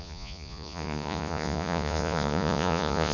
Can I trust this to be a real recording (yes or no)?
no